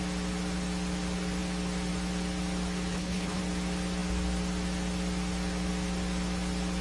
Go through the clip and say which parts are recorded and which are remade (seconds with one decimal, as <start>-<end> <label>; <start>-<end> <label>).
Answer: 0.0-2.9 recorded; 2.9-3.4 remade; 3.4-6.8 recorded